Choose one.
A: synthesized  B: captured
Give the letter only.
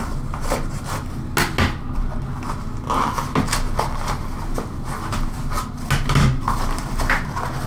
B